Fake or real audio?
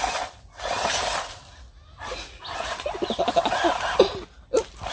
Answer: real